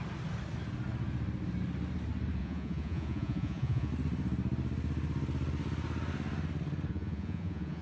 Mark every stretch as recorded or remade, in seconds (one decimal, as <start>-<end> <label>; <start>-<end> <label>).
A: 0.0-2.4 recorded; 2.4-3.9 remade; 3.9-6.9 recorded; 6.9-7.8 remade